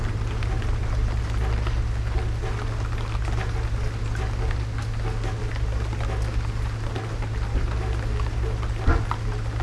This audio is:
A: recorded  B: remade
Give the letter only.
A